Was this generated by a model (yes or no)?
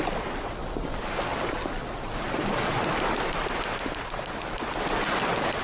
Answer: no